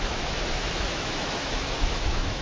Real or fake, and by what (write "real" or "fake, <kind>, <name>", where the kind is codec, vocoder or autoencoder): fake, autoencoder, DAC-VAE